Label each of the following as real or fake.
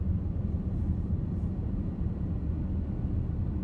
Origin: real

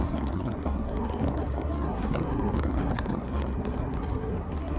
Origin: fake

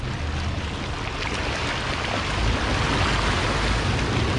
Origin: real